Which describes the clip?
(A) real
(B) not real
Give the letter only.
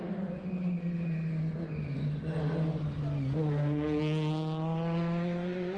A